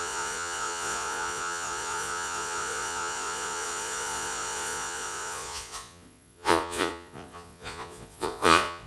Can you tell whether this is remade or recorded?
remade